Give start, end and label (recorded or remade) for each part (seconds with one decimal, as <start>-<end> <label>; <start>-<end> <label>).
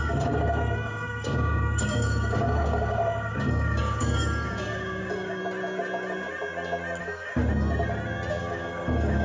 0.0-5.4 remade; 5.4-7.0 recorded; 7.0-7.4 remade; 7.4-8.4 recorded; 8.4-9.2 remade